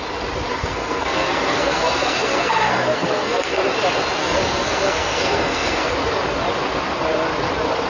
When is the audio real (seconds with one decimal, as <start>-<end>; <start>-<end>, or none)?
0.0-0.5; 3.6-4.2; 5.9-7.9